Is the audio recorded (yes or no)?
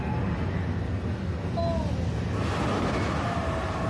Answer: yes